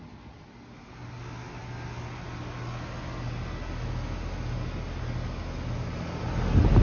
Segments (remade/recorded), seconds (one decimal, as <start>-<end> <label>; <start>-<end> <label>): 0.0-6.8 recorded